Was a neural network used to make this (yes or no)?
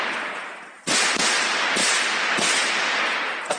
no